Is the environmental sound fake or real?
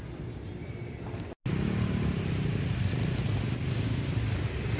real